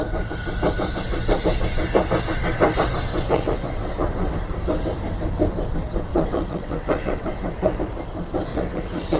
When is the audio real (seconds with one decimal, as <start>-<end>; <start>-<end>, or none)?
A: 0.0-3.1; 4.3-6.1; 7.8-8.5